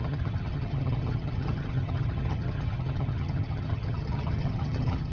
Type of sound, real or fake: fake